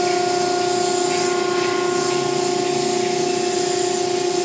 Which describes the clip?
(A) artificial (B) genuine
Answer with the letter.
B